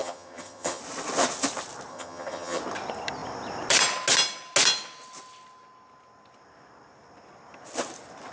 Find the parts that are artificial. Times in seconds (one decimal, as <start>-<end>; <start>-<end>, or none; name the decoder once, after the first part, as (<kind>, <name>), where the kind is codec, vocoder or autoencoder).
0.0-0.8 (vocoder, HiFi-GAN); 1.9-2.6